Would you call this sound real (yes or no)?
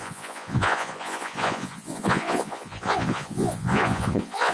no